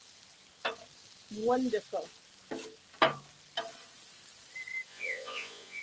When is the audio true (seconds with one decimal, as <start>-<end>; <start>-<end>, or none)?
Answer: 0.0-4.9